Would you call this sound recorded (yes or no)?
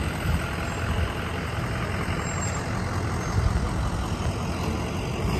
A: yes